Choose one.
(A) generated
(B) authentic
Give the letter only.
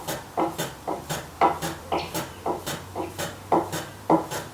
B